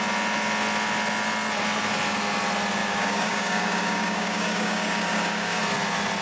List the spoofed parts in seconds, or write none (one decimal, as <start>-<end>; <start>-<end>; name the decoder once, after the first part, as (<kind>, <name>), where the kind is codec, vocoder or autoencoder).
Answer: 2.8-5.6 (codec, DAC)